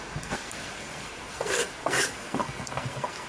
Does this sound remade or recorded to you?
remade